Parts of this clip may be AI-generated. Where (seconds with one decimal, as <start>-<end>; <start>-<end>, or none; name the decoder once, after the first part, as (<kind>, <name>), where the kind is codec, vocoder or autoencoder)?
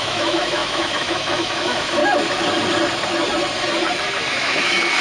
0.0-2.0 (autoencoder, DAC-VAE); 4.3-5.0